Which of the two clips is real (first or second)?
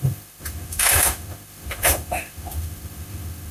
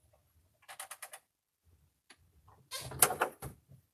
second